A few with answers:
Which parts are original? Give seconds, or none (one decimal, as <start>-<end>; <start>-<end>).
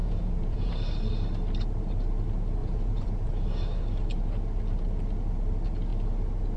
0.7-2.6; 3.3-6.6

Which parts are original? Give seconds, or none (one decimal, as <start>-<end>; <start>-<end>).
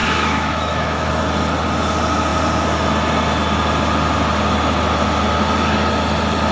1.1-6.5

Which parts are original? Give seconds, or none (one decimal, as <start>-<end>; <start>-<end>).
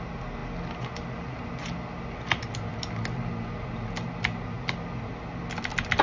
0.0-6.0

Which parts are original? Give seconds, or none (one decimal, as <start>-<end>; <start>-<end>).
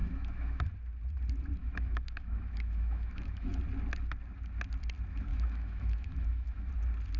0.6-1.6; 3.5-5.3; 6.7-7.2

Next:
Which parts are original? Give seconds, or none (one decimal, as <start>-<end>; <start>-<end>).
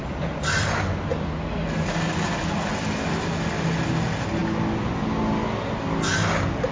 0.0-6.7